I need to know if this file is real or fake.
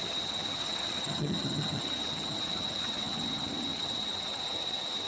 fake